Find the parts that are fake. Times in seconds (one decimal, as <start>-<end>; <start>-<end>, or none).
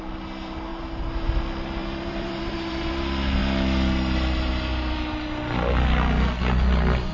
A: 0.7-1.3; 1.8-2.9